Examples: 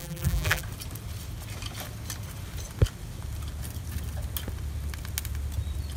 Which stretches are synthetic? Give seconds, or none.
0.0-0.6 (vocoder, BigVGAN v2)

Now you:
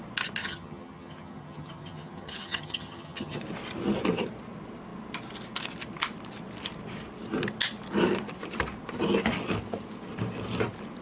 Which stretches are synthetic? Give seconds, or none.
0.4-3.4 (vocoder, HiFi-GAN)

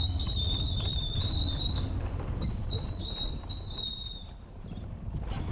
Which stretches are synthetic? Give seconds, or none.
0.9-2.3 (vocoder, BigVGAN v2); 4.2-4.9

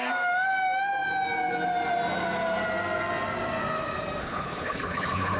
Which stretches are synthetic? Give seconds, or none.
4.2-5.4 (codec, HILCodec)